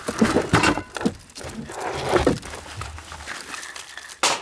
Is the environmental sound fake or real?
real